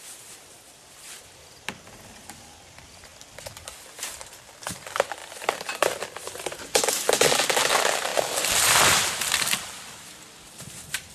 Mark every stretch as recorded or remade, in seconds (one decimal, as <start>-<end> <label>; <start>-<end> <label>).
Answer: 0.0-3.1 remade; 3.1-3.9 recorded; 3.9-8.1 remade; 8.1-8.9 recorded; 8.9-11.1 remade